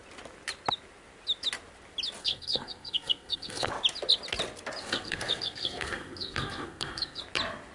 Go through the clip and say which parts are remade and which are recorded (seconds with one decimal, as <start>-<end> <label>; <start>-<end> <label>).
0.0-2.2 recorded; 2.2-3.7 remade; 3.7-4.8 recorded; 4.8-7.2 remade; 7.2-7.7 recorded